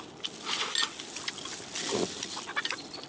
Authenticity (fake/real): real